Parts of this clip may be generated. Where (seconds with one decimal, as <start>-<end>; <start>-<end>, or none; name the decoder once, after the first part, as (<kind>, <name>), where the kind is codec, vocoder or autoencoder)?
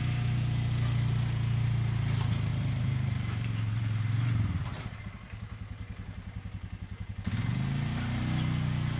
2.5-5.0 (vocoder, BigVGAN v2)